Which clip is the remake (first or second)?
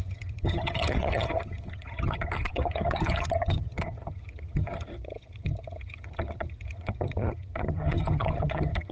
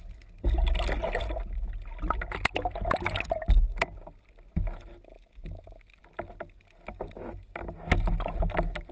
first